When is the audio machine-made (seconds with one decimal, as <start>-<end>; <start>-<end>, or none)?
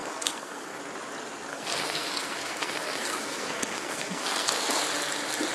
0.0-0.8; 1.5-4.8